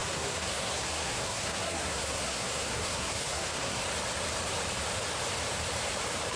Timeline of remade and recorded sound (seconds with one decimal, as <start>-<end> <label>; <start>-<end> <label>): 0.0-3.8 remade; 3.8-6.4 recorded